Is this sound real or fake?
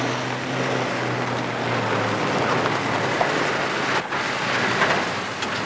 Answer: real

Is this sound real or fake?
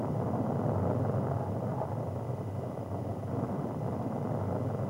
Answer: real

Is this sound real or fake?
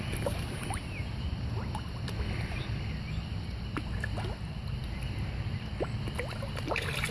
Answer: real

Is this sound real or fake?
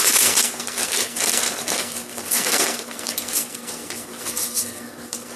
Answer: fake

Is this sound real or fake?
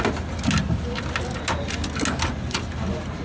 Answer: real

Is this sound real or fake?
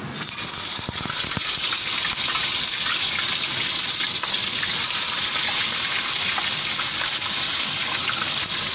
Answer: real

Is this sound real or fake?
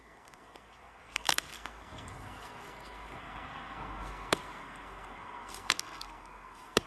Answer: fake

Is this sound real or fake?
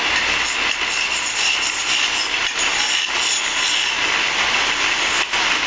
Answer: real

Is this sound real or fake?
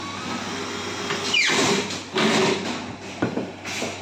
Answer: real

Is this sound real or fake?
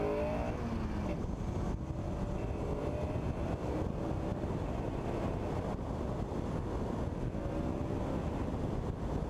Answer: real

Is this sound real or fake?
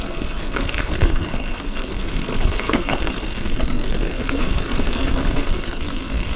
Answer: fake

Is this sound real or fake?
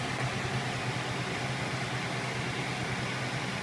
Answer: real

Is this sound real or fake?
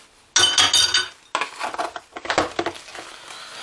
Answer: real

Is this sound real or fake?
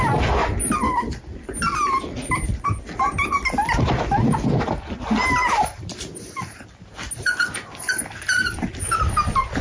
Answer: real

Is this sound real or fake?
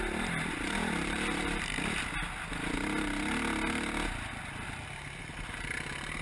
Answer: real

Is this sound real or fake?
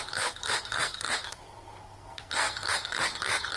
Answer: fake